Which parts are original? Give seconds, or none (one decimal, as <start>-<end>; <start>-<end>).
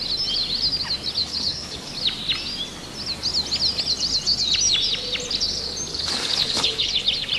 0.0-1.2; 1.9-5.9; 7.0-7.4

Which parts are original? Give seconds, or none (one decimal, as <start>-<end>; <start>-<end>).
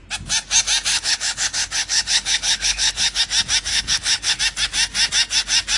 0.0-0.9; 3.2-3.7; 4.4-5.8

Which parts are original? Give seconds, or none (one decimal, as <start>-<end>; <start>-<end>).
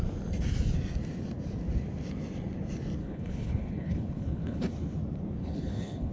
0.0-3.0; 4.7-5.4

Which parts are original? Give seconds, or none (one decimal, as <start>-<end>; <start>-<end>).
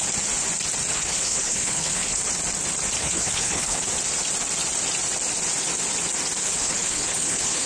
0.0-0.9; 2.2-3.0; 3.8-6.4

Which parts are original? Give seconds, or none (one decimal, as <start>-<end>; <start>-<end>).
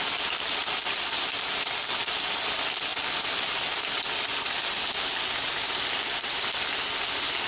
0.0-7.5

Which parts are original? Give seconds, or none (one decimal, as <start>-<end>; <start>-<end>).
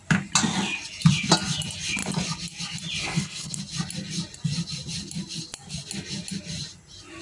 0.0-3.0; 3.6-7.2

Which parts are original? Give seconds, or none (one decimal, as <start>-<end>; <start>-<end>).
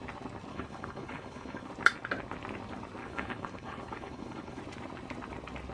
0.0-0.5; 1.7-3.0; 4.6-5.7